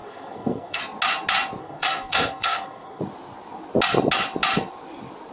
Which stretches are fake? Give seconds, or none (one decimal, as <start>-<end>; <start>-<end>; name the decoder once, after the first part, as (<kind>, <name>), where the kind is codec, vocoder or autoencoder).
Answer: 0.0-0.8 (codec, SNAC); 1.6-3.0